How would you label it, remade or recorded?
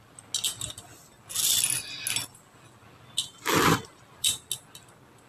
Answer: recorded